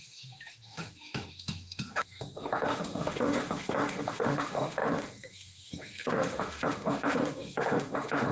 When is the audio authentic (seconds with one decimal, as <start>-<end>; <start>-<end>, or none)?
none